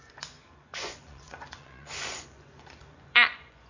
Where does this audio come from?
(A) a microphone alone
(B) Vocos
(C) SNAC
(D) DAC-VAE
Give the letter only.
B